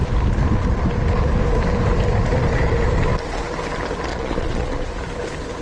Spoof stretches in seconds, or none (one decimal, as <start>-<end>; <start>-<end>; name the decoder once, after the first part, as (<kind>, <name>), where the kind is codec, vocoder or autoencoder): 4.1-4.9 (vocoder, Vocos)